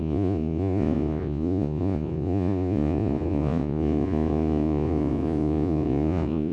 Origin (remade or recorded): remade